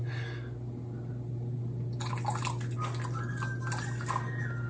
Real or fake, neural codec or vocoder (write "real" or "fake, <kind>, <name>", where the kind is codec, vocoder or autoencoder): real